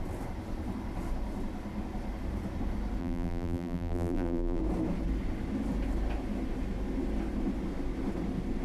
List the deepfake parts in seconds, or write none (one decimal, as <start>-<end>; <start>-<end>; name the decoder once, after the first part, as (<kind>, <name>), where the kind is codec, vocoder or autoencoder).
3.0-4.6 (vocoder, BigVGAN v2)